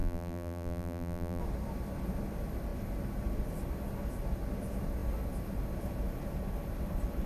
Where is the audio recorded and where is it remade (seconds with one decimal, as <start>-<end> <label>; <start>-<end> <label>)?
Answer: 0.0-1.4 remade; 1.4-7.3 recorded

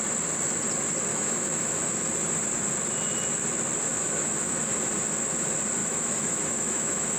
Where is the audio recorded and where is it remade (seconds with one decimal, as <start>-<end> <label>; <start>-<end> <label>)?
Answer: 0.0-1.1 recorded; 1.1-2.0 remade; 2.0-3.9 recorded; 3.9-4.6 remade; 4.6-5.8 recorded; 5.8-7.2 remade